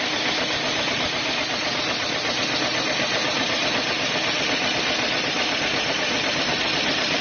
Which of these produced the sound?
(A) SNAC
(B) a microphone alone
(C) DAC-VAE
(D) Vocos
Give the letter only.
B